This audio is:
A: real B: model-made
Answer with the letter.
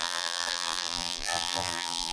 B